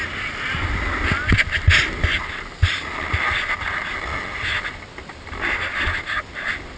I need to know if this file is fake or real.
real